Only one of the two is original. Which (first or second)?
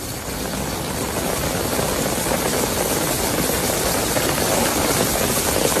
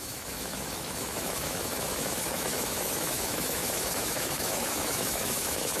first